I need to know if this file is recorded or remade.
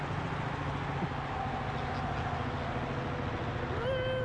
recorded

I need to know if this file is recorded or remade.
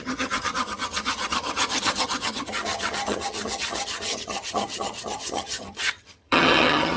remade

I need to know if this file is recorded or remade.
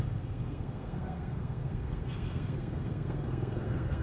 remade